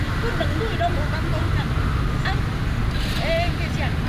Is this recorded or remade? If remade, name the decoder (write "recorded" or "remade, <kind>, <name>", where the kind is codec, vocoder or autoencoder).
recorded